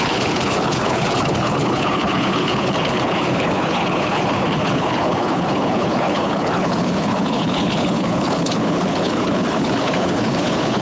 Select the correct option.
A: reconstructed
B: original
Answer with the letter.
A